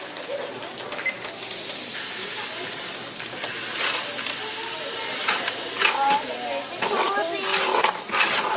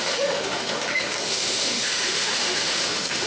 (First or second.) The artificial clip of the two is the second